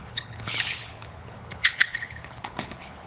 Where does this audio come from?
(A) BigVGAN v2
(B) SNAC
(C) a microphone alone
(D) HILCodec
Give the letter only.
D